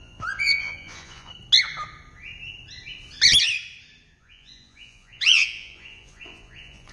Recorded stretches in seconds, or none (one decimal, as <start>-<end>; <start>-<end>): 1.3-4.2